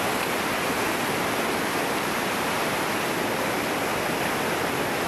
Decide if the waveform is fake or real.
real